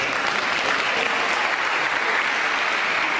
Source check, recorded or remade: recorded